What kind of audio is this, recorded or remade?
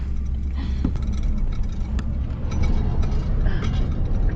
recorded